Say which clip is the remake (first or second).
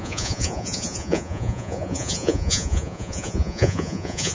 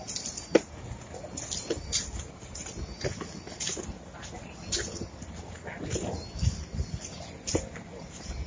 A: first